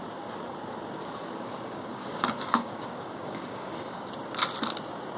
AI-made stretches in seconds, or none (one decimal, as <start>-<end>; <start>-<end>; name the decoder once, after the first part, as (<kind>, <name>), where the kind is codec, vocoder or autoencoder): 1.0-4.1 (codec, DAC)